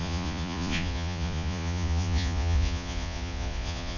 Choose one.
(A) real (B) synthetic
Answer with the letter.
B